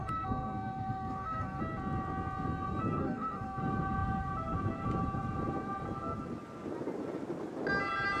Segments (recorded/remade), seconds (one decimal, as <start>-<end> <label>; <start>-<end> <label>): 0.0-1.6 remade; 1.6-3.0 recorded; 3.0-3.6 remade; 3.6-8.2 recorded